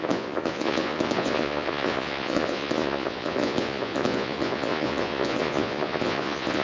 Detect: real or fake fake